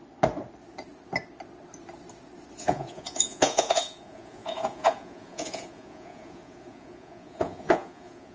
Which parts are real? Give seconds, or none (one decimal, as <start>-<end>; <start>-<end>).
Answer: 0.0-2.6

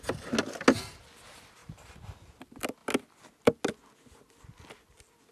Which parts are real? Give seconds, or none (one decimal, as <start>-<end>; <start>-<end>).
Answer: 0.0-1.6; 2.4-5.3